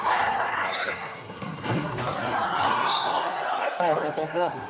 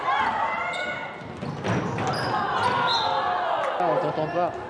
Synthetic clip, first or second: first